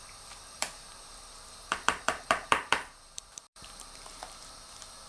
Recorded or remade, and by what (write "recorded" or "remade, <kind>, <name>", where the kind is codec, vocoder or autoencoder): remade, vocoder, BigVGAN v2